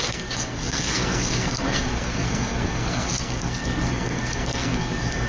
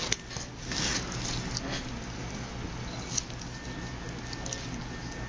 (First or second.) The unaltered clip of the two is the second